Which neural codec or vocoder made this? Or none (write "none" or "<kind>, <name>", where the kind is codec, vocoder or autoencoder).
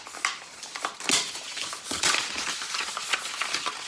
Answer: none